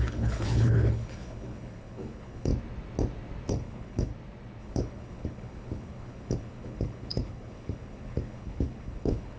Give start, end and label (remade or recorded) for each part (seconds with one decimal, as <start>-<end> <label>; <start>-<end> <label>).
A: 0.0-2.5 remade; 2.5-3.5 recorded; 3.5-4.1 remade; 4.1-4.6 recorded; 4.6-9.4 remade